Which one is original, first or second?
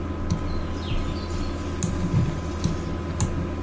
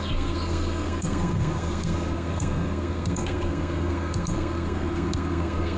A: first